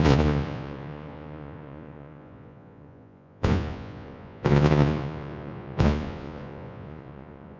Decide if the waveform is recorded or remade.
remade